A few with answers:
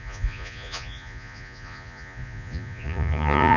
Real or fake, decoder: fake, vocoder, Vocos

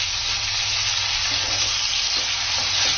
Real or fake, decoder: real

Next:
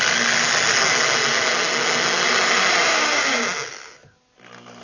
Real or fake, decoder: real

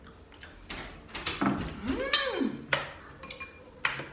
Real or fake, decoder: real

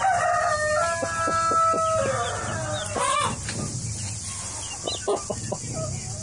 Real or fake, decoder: real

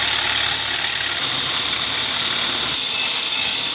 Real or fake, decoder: real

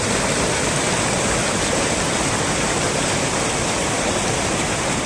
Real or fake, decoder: fake, vocoder, BigVGAN v2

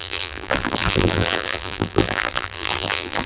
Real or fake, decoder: fake, vocoder, BigVGAN v2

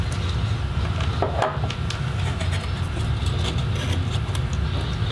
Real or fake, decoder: real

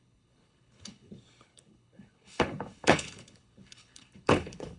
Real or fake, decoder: fake, codec, HILCodec